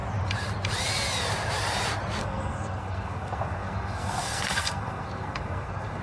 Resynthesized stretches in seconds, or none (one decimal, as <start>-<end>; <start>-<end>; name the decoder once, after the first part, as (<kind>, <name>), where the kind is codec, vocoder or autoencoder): 2.2-6.0 (codec, SNAC)